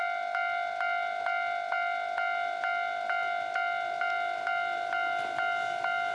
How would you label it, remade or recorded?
recorded